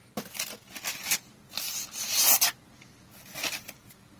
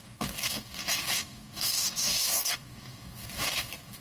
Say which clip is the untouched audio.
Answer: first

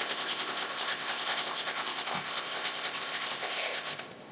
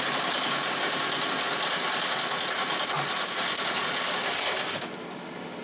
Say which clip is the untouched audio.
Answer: second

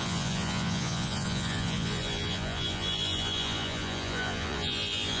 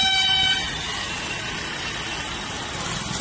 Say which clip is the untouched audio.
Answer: second